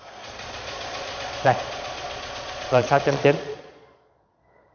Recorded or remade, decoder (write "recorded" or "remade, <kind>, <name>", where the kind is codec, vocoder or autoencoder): remade, vocoder, Vocos